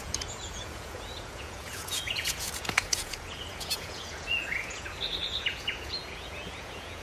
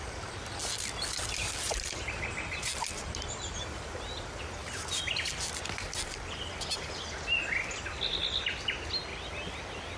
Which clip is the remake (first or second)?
first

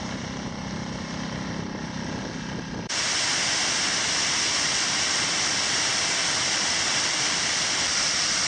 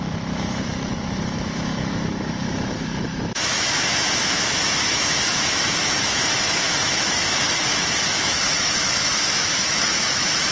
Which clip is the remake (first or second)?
second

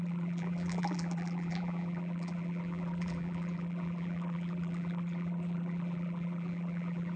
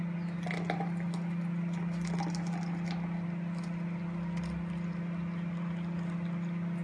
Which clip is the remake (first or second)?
first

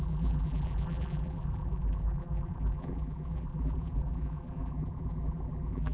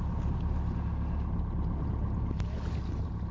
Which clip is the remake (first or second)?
first